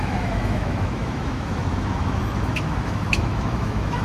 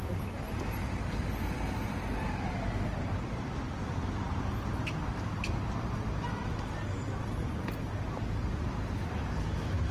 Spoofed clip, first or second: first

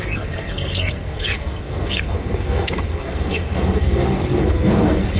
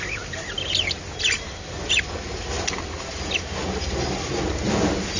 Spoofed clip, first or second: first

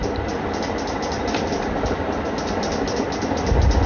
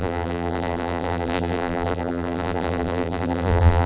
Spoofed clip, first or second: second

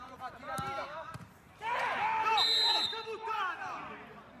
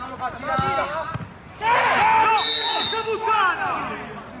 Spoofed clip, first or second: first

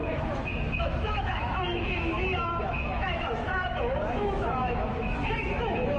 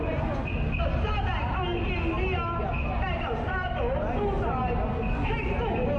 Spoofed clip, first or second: first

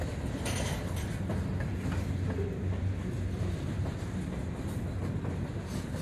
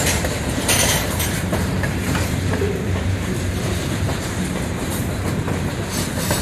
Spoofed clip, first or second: second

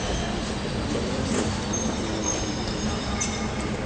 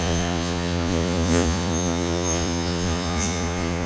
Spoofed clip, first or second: second